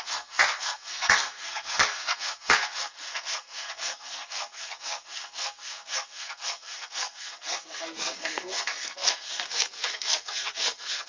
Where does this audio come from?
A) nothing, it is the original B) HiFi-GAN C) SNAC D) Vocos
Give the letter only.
C